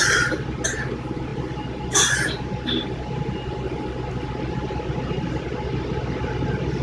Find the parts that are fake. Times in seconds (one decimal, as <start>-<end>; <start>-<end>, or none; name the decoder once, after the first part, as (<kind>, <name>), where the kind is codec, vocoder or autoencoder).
none